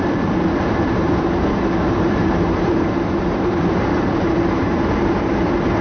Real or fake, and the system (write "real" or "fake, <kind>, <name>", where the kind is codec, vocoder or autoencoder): fake, vocoder, BigVGAN v2